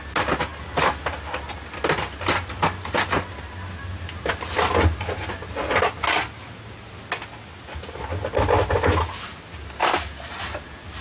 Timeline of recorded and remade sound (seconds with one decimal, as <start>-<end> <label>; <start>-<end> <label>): 0.0-11.0 recorded